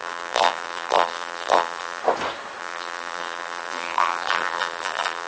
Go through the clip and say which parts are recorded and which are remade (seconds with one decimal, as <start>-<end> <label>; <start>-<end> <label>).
0.0-2.0 remade; 2.0-2.6 recorded; 2.6-5.3 remade